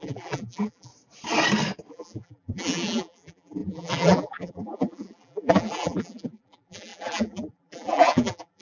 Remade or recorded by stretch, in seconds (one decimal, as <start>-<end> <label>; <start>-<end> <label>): 0.0-0.9 remade; 0.9-1.9 recorded; 1.9-8.6 remade